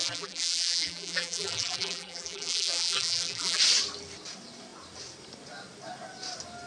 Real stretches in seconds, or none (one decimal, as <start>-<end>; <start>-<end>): 3.6-6.7